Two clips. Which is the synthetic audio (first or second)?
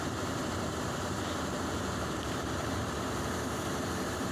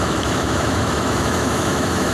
second